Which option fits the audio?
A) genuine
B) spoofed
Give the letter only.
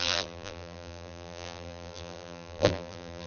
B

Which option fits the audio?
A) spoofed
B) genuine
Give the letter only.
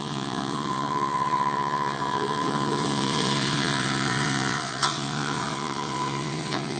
A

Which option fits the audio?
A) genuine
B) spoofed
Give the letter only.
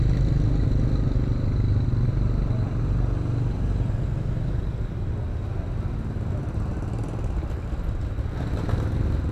A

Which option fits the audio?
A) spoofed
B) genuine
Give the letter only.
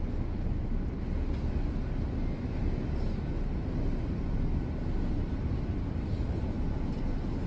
B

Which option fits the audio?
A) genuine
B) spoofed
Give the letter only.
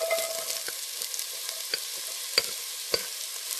A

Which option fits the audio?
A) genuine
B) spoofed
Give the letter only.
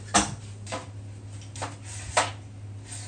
A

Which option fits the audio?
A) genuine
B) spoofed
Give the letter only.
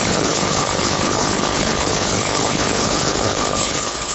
B